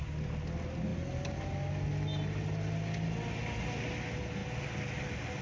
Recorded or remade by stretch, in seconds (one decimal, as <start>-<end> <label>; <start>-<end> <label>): 0.0-5.4 recorded